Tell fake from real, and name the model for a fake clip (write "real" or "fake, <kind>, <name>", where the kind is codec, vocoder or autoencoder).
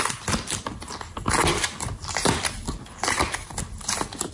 real